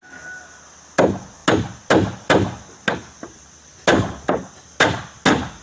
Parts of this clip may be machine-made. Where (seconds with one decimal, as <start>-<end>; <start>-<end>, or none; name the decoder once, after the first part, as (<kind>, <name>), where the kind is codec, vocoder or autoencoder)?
none